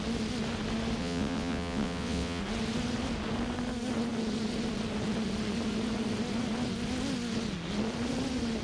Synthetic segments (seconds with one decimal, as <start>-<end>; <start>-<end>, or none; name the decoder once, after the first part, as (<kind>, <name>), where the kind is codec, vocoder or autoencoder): 1.0-2.4 (vocoder, WaveNeXt)